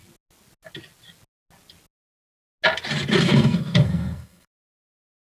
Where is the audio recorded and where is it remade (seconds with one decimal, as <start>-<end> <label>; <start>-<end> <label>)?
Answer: 0.0-3.2 recorded; 3.2-5.3 remade